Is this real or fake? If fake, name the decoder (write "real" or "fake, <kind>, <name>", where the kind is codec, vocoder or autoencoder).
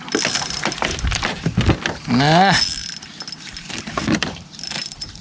real